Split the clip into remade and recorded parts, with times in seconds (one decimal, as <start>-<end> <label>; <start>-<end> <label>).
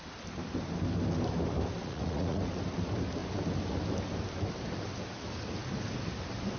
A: 0.0-1.8 recorded; 1.8-2.4 remade; 2.4-6.6 recorded